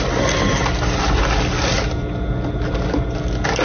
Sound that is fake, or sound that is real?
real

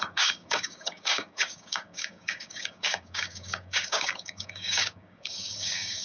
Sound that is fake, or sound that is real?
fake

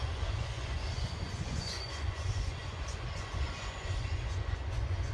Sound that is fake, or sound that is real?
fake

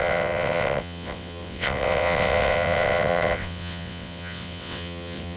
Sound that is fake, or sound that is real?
fake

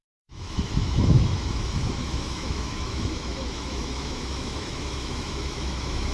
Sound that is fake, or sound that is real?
fake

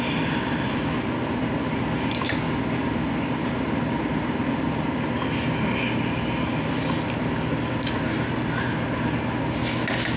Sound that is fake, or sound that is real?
real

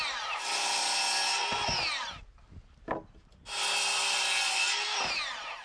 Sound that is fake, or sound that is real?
real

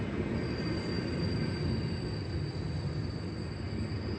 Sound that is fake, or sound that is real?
real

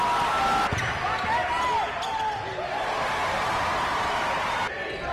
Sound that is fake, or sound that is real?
real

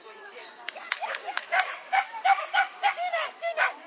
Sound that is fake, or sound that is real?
fake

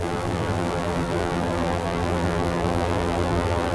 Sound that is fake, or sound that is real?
fake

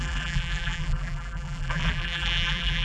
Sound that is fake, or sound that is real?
fake